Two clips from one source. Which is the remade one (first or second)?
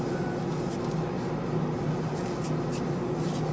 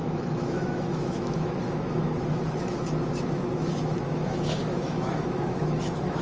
second